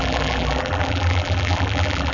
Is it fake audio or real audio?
fake